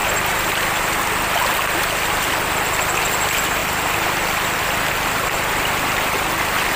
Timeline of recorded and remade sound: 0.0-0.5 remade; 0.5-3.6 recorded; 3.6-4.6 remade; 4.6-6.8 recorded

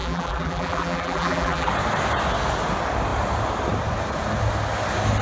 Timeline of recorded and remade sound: 0.0-1.7 remade; 1.7-5.2 recorded

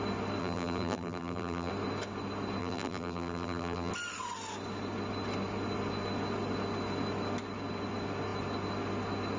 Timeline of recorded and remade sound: 0.0-0.4 recorded; 0.4-1.7 remade; 1.7-2.6 recorded; 2.6-3.9 remade; 3.9-9.4 recorded